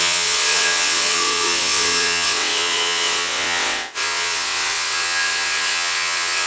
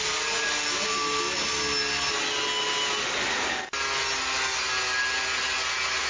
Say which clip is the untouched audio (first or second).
second